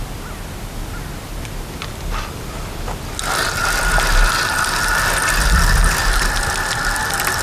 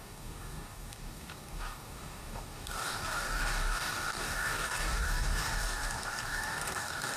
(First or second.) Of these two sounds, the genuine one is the first